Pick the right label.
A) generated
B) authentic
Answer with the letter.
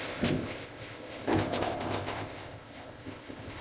A